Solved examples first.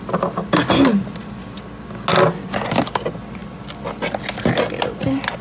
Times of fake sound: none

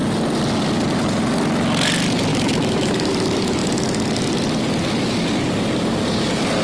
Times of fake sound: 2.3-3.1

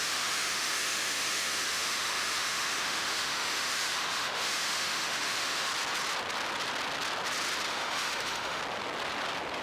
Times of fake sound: 0.0-5.7; 7.7-8.6

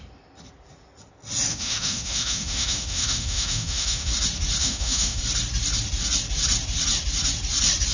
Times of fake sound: 1.5-4.1; 4.6-5.2

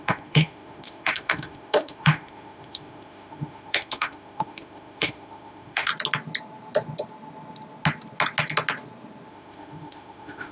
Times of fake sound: 0.0-5.9; 9.3-10.5